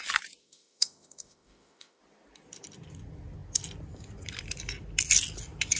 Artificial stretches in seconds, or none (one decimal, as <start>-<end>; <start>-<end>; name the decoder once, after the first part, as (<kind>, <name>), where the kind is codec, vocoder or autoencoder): 0.4-2.0 (autoencoder, DAC-VAE)